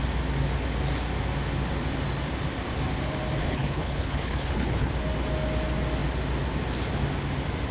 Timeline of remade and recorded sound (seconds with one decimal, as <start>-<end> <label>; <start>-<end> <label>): 0.0-3.4 recorded; 3.4-4.9 remade; 4.9-7.7 recorded